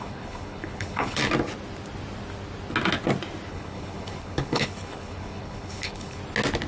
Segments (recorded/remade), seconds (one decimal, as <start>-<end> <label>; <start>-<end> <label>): 0.0-1.2 remade; 1.2-3.5 recorded; 3.5-6.2 remade; 6.2-6.7 recorded